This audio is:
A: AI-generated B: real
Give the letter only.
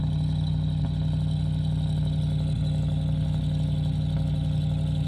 B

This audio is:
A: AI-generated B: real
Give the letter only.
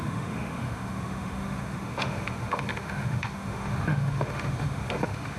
A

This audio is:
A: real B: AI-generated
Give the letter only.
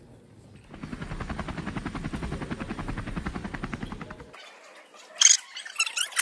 A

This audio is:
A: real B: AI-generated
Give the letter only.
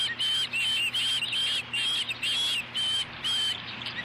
A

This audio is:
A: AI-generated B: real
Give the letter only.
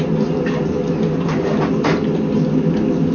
B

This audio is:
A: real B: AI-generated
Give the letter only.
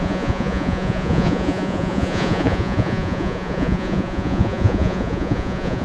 B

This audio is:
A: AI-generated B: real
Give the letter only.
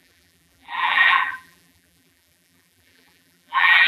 A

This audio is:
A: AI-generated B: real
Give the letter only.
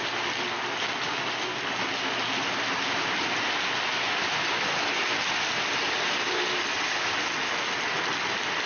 B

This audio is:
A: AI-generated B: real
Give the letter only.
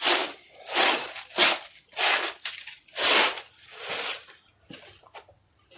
B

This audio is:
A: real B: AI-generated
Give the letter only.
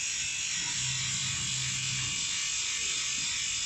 A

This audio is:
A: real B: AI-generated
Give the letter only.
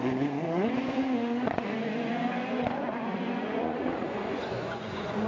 B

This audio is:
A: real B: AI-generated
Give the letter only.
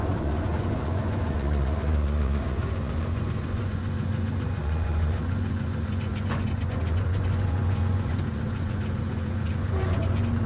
B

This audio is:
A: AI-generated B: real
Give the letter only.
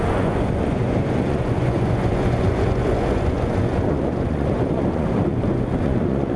A